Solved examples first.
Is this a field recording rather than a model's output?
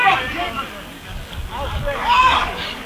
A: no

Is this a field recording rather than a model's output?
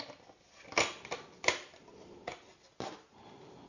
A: yes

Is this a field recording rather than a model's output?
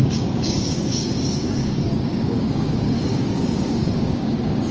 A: no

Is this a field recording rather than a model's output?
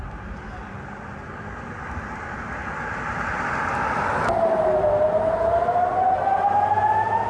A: yes